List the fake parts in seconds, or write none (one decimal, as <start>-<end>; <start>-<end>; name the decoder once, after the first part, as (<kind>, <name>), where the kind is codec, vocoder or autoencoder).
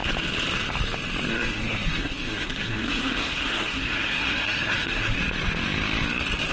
1.3-5.2 (codec, SNAC)